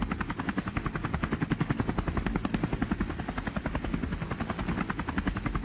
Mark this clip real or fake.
real